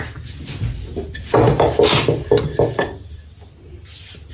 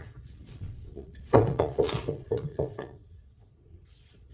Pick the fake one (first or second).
second